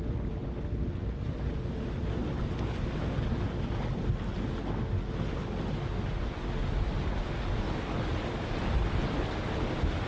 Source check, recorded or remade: recorded